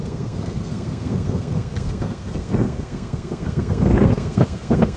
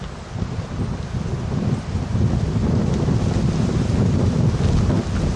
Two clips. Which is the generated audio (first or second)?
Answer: first